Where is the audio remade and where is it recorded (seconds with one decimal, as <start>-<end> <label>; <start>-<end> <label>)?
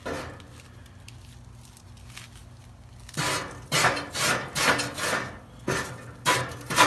0.0-6.9 recorded